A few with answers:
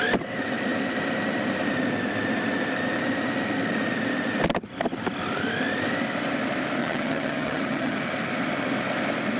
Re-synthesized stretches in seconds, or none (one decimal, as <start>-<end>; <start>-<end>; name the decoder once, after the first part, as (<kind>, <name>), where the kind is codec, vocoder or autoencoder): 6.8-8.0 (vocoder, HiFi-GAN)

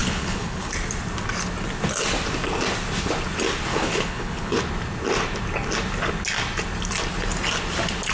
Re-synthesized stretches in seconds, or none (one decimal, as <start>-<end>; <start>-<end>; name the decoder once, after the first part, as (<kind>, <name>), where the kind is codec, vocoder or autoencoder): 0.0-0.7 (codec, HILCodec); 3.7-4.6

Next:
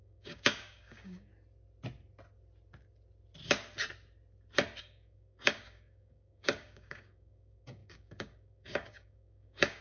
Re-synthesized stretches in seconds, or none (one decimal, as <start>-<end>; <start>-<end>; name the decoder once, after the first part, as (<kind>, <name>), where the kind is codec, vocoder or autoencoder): 0.0-1.3 (codec, DAC); 4.8-9.8